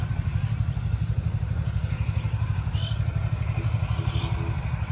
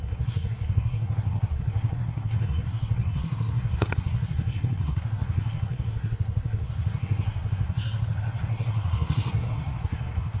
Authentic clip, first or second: first